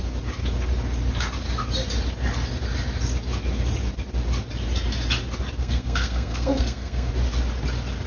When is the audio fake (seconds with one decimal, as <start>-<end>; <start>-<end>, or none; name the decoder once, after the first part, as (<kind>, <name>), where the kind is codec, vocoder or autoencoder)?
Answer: 5.6-7.1 (codec, SNAC)